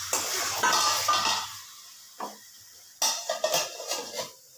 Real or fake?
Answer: real